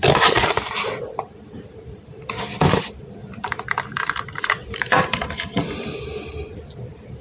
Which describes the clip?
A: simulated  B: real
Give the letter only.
A